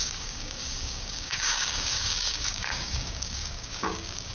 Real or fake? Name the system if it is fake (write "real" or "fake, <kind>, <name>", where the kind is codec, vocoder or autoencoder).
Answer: fake, codec, DAC